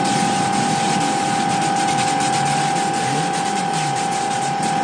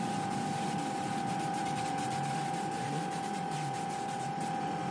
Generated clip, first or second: second